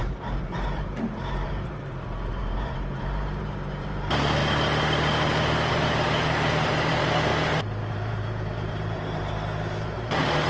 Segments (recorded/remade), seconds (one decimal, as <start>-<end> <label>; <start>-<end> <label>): 0.0-4.4 remade; 4.4-5.7 recorded; 5.7-7.3 remade; 7.3-7.9 recorded; 7.9-10.5 remade